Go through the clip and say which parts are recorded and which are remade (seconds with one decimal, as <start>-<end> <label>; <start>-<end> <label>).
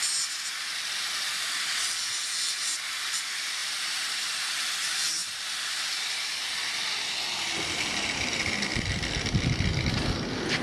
0.0-3.6 recorded; 3.6-4.4 remade; 4.4-5.2 recorded; 5.2-5.8 remade; 5.8-8.7 recorded; 8.7-9.2 remade; 9.2-10.6 recorded